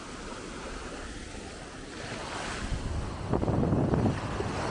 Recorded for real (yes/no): yes